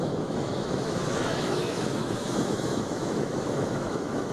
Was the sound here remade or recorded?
remade